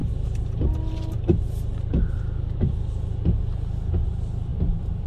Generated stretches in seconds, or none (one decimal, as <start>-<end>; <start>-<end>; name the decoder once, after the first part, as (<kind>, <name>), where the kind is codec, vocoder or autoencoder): none